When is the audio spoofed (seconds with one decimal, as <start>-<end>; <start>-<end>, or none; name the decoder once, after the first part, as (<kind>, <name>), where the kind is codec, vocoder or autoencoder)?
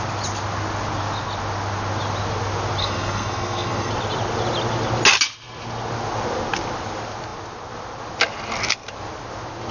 2.8-3.9 (codec, SNAC)